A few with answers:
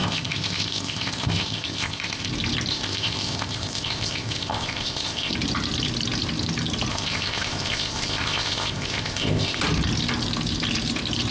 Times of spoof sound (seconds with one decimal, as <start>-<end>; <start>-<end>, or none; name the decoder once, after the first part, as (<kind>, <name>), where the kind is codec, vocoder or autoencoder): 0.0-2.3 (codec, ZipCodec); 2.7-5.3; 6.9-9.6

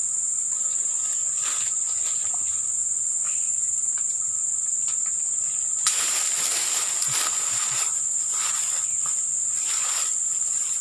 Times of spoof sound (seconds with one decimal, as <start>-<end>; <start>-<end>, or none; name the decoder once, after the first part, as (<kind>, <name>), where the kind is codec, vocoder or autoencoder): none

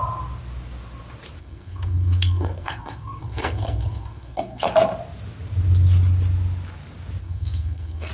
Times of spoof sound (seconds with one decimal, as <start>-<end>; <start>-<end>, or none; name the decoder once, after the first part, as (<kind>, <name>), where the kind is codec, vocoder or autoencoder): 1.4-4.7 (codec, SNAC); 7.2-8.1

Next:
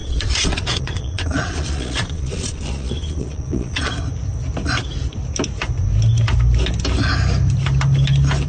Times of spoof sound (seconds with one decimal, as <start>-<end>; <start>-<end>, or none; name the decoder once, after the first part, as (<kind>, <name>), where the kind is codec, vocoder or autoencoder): 0.0-3.9 (vocoder, Vocos)

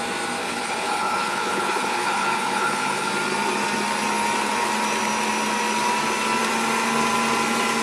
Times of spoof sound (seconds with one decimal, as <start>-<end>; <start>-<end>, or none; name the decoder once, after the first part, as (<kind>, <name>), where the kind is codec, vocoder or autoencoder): 0.4-3.1 (codec, HILCodec)

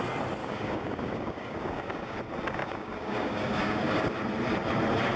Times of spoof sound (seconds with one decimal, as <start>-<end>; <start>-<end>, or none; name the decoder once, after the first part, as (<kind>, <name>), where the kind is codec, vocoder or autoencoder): 0.4-2.2 (codec, DAC); 2.6-4.1

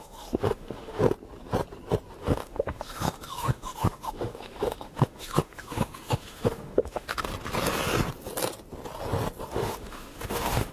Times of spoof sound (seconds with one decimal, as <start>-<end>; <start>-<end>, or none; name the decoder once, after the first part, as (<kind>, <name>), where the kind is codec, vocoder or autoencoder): 0.0-1.0 (autoencoder, DAC-VAE); 2.2-7.3; 9.5-10.7

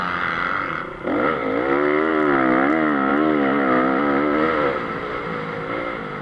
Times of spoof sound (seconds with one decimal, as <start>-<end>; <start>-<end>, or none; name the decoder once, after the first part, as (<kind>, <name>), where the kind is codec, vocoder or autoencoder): none